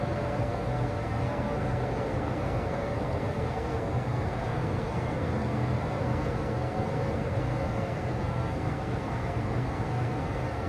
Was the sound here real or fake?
fake